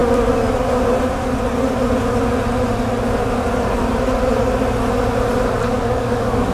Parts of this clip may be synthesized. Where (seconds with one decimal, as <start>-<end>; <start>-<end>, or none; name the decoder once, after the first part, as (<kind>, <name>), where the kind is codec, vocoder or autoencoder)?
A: 5.7-6.5 (codec, DAC)